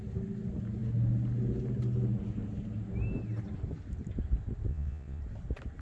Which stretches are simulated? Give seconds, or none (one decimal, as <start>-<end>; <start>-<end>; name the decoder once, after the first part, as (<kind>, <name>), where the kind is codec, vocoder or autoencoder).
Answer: 4.7-5.2 (vocoder, Vocos)